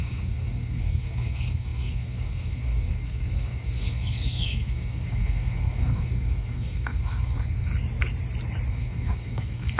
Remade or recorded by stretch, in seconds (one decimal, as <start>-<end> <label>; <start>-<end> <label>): 0.0-7.7 remade; 7.7-8.7 recorded; 8.7-9.8 remade